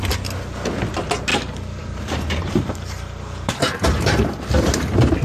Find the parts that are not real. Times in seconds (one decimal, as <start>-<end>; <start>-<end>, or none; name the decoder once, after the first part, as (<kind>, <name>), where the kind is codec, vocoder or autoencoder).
1.3-4.4 (vocoder, BigVGAN v2)

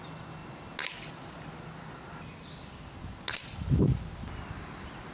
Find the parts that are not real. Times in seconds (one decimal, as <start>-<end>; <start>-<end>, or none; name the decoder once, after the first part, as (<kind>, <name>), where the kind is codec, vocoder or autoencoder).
none